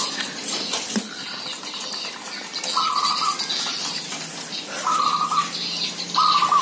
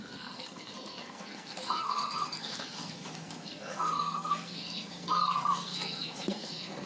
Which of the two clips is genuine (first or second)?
first